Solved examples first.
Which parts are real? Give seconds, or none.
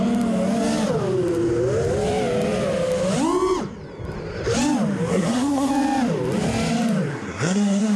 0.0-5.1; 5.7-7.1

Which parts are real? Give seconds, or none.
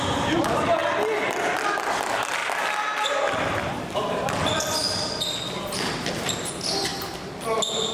0.0-7.9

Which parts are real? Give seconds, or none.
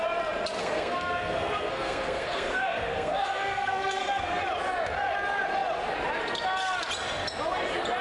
0.0-0.6; 4.4-8.0